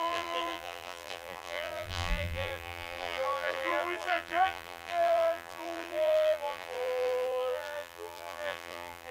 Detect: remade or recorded remade